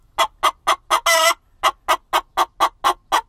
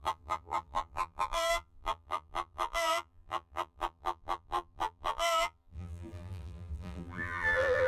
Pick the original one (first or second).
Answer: first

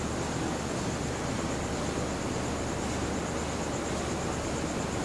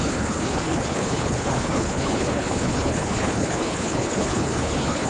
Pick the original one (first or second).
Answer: first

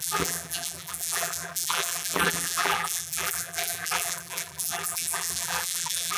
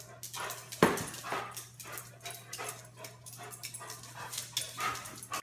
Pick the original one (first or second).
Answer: second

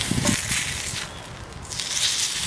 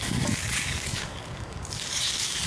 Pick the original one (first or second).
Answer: first